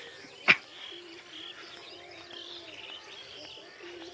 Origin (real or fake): real